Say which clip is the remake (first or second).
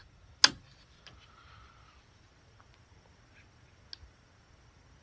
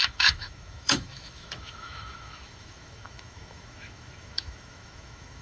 second